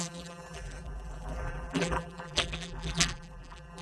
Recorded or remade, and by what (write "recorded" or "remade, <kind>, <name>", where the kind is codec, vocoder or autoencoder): remade, vocoder, BigVGAN v2